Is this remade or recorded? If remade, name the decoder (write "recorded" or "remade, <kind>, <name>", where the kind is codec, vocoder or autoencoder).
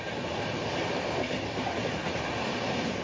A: recorded